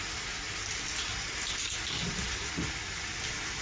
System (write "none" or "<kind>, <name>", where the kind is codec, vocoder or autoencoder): none